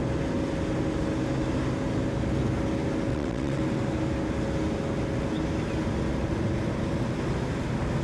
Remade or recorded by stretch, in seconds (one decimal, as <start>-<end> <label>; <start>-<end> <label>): 0.0-3.1 recorded; 3.1-3.6 remade; 3.6-8.0 recorded